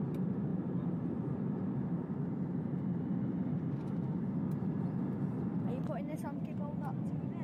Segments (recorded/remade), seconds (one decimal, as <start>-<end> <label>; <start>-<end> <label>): 0.0-0.5 recorded; 0.5-1.5 remade; 1.5-7.4 recorded